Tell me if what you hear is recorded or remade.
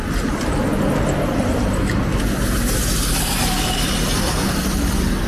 recorded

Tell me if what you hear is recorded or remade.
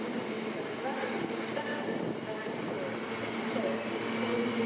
recorded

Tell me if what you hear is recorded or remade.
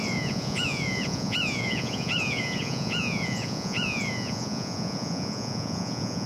remade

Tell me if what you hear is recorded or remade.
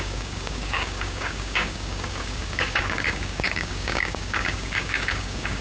remade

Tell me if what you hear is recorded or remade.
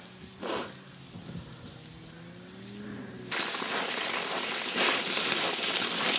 recorded